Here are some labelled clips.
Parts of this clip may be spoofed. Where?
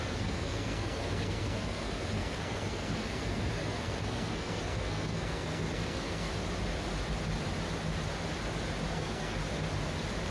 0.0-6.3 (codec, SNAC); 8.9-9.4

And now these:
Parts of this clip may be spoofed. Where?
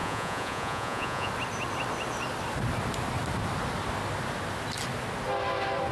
0.0-1.3 (vocoder, Vocos)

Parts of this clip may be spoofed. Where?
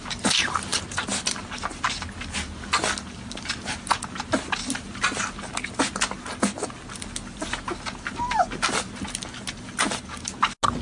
none